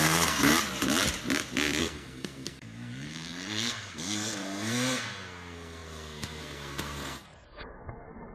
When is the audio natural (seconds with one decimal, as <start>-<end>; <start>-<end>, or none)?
0.5-1.8